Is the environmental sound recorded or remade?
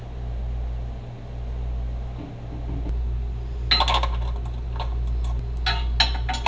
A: recorded